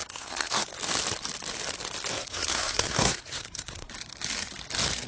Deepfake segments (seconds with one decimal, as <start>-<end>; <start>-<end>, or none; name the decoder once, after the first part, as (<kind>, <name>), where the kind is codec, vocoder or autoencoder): 0.0-0.7 (codec, SNAC); 2.1-3.9